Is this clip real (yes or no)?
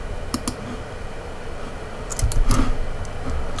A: yes